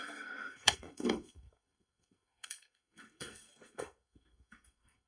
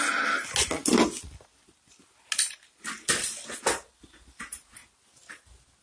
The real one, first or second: second